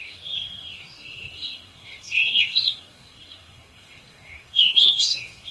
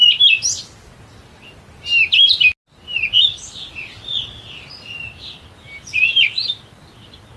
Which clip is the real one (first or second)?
second